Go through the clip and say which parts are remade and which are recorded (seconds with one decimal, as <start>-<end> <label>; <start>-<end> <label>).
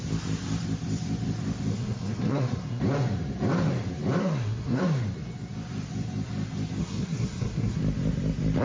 0.0-1.7 recorded; 1.7-2.8 remade; 2.8-4.2 recorded; 4.2-4.8 remade; 4.8-6.8 recorded; 6.8-7.8 remade; 7.8-8.6 recorded